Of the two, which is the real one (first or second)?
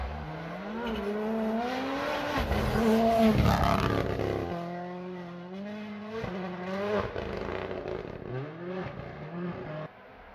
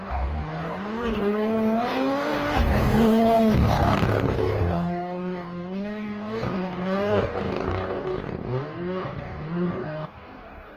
first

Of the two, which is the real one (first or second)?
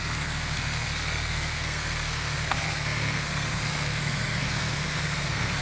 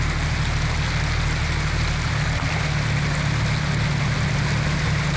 second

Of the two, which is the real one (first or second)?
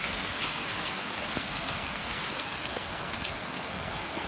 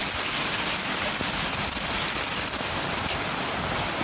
second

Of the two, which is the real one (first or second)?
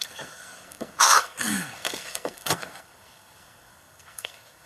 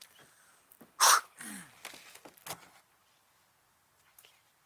second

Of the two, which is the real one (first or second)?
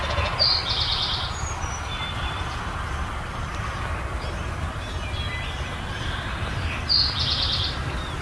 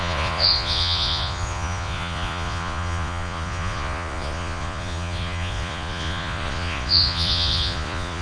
first